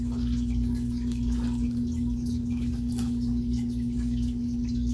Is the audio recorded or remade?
remade